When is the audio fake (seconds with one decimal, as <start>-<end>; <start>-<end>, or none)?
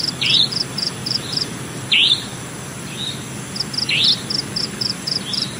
0.0-2.3; 4.6-5.6